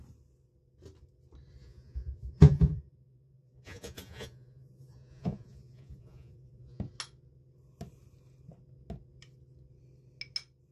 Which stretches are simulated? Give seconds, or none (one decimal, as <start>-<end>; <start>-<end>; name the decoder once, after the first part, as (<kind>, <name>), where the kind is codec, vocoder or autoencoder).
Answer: 1.6-6.8 (vocoder, Vocos)